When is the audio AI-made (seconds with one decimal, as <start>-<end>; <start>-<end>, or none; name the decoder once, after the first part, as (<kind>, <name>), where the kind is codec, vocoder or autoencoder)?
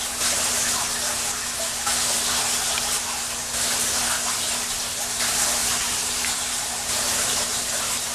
5.6-7.6 (vocoder, BigVGAN v2)